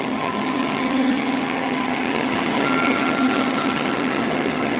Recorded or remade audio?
remade